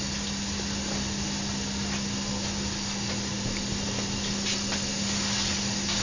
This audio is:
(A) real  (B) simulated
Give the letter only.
A